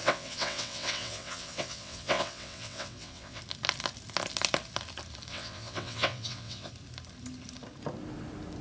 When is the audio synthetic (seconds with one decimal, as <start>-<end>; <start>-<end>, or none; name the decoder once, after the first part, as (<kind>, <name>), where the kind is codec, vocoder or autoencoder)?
0.0-3.4 (vocoder, WaveNeXt); 5.3-6.7